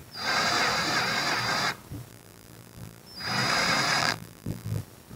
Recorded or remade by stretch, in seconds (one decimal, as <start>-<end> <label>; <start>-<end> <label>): 0.0-2.1 recorded; 2.1-3.0 remade; 3.0-4.0 recorded; 4.0-4.8 remade; 4.8-5.2 recorded